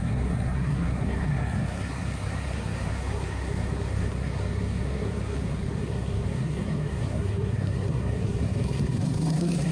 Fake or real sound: fake